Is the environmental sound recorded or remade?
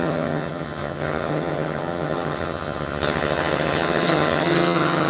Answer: remade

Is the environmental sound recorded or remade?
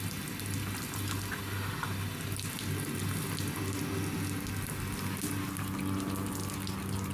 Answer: recorded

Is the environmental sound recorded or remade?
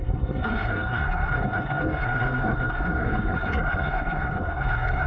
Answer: remade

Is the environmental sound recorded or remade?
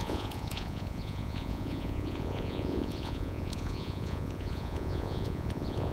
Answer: remade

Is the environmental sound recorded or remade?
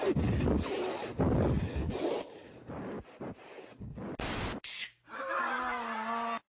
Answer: recorded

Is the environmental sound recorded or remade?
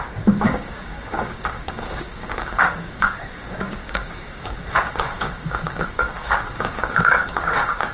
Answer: remade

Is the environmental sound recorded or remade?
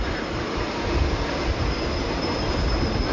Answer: recorded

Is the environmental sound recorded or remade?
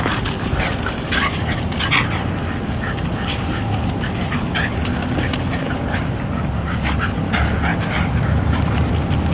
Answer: recorded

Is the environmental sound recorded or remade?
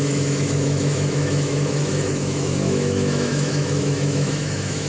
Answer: remade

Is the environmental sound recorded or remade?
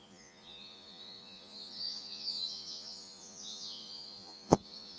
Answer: remade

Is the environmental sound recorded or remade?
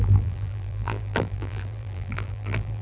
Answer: remade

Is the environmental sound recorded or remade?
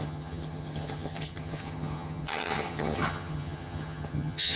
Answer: remade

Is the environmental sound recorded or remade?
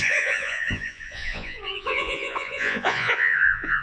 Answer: remade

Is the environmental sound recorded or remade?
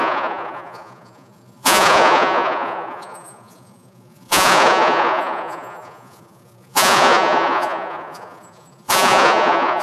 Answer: remade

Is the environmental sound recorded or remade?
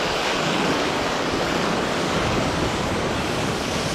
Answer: remade